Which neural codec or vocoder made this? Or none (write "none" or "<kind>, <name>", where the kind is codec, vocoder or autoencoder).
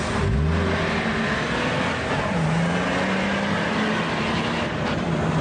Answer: none